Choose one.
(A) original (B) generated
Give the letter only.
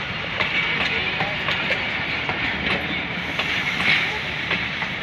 B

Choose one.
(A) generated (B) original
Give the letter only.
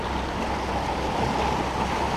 B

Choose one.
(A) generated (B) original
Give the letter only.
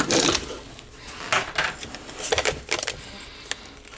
B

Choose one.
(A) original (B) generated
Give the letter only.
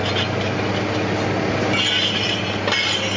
A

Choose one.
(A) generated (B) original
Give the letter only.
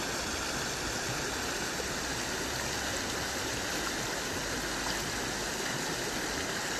B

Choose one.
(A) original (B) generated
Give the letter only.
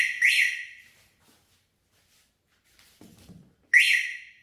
A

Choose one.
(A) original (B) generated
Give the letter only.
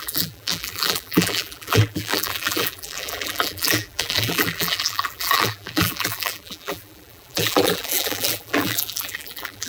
B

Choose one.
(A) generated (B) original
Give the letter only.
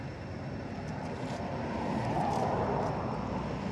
B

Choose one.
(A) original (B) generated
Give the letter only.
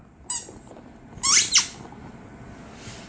A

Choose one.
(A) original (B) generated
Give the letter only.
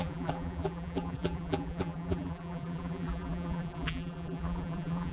B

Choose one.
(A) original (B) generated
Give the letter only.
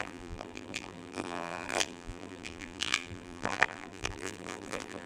B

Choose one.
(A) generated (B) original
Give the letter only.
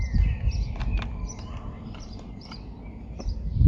B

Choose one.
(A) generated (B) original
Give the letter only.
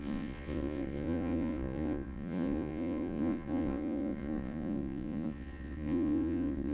A